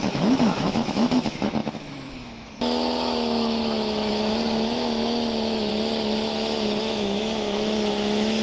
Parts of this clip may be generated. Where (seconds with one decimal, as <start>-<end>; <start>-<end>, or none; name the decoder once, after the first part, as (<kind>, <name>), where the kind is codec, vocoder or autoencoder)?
0.0-5.7 (autoencoder, DAC-VAE); 6.8-8.4